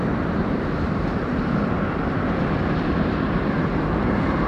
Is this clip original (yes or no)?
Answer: no